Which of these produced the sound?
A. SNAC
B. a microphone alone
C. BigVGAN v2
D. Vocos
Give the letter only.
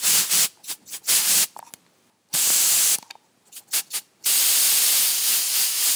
B